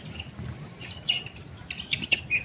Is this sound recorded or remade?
recorded